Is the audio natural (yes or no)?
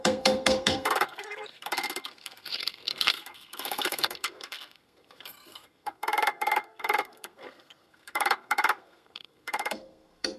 no